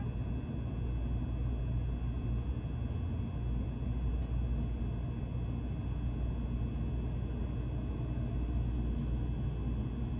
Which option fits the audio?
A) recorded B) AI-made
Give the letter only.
A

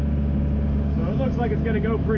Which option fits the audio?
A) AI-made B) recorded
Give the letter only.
B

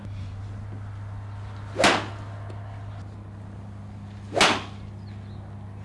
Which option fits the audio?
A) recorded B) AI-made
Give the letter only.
A